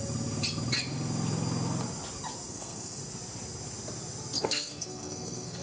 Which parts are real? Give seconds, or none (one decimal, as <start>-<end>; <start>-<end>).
0.0-2.5; 3.0-4.4